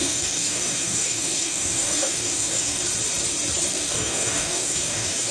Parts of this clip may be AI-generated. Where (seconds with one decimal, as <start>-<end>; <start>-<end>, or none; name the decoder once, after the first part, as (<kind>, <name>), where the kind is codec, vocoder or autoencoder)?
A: 0.0-2.8 (codec, DAC); 3.7-5.3